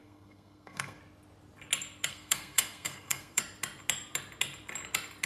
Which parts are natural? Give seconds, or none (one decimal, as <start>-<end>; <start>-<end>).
1.0-2.1; 3.4-5.3